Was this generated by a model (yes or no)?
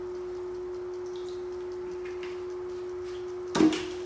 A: no